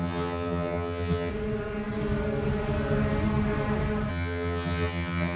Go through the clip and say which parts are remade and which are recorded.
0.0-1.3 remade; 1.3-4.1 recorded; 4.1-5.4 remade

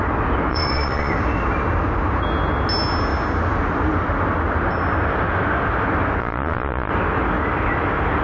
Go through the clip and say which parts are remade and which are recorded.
0.0-0.5 recorded; 0.5-1.1 remade; 1.1-6.2 recorded; 6.2-6.9 remade; 6.9-8.2 recorded

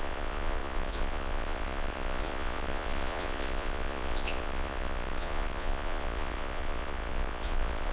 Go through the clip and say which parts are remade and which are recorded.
0.0-7.9 remade

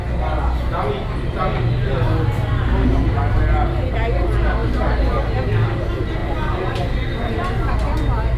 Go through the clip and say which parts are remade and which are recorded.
0.0-8.4 recorded

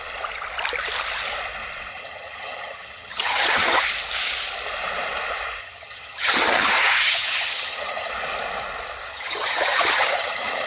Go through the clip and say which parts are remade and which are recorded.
0.0-1.9 recorded; 1.9-3.8 remade; 3.8-5.6 recorded; 5.6-8.1 remade; 8.1-9.1 recorded; 9.1-10.7 remade

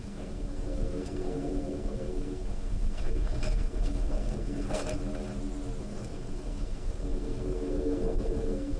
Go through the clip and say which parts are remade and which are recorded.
0.0-5.0 remade; 5.0-5.8 recorded; 5.8-8.8 remade

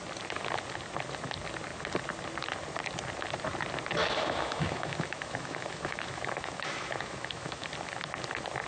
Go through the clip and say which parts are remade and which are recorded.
0.0-4.0 recorded; 4.0-7.7 remade; 7.7-8.7 recorded

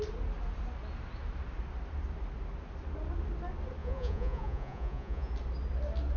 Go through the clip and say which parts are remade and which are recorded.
0.0-3.8 recorded; 3.8-5.3 remade; 5.3-6.2 recorded